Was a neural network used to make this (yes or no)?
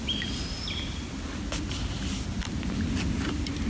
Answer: no